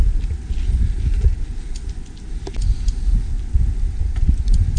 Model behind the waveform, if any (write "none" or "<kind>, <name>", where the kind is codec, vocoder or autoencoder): none